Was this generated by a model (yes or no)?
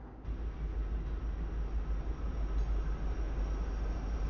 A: no